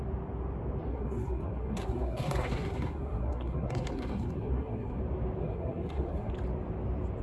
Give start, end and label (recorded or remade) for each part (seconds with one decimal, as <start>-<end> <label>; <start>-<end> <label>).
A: 0.0-0.9 recorded; 0.9-5.0 remade; 5.0-5.4 recorded; 5.4-6.3 remade; 6.3-7.2 recorded